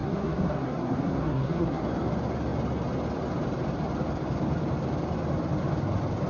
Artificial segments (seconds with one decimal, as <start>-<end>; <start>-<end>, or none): 0.0-1.8